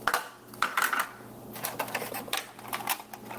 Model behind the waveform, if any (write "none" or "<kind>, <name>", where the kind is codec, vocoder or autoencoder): none